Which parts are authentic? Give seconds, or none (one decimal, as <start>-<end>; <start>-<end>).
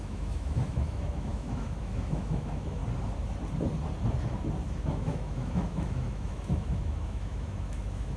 2.8-4.8